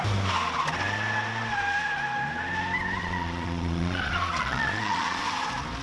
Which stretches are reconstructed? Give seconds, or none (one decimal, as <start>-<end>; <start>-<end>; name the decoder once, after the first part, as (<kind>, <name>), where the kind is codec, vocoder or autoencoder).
3.0-5.2 (vocoder, Vocos)